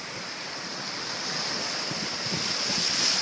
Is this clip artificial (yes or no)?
no